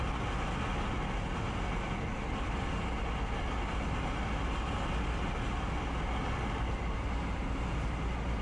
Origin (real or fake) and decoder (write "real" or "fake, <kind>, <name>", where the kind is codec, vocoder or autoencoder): real